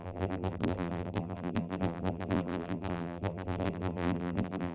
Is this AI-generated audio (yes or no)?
yes